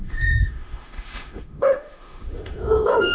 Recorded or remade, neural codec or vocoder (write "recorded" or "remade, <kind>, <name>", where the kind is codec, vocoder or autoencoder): remade, autoencoder, DAC-VAE